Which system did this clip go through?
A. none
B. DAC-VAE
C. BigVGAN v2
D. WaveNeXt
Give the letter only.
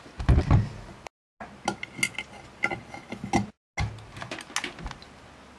A